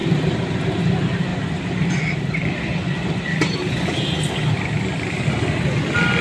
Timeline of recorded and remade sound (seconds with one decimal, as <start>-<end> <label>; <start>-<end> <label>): 0.0-6.2 recorded